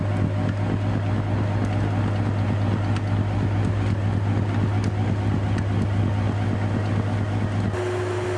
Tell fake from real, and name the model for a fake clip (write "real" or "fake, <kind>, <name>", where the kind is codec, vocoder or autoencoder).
real